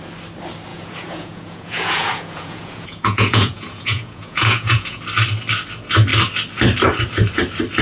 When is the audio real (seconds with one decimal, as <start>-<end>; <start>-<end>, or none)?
0.0-0.7; 5.0-7.8